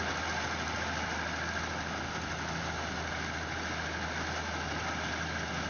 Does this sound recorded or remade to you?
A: recorded